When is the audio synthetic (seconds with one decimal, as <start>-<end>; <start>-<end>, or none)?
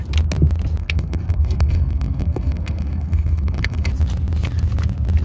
0.8-3.9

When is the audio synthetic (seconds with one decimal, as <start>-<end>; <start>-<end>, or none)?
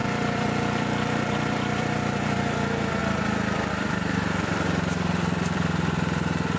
0.0-3.0; 3.7-6.6